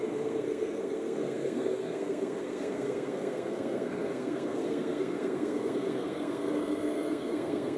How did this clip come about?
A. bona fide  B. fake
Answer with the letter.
B